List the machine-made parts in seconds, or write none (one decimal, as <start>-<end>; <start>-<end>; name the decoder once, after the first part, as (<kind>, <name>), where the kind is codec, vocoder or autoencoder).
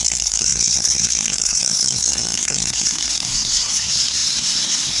0.0-5.0 (codec, SNAC)